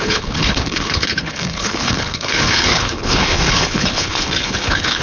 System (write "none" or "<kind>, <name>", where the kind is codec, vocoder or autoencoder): codec, HILCodec